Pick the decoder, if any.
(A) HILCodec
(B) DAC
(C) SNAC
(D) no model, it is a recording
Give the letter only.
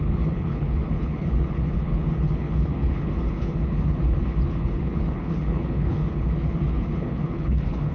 A